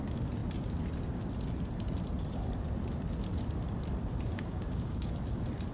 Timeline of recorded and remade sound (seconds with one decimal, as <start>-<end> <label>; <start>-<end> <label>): 0.0-4.3 recorded; 4.3-5.1 remade; 5.1-5.7 recorded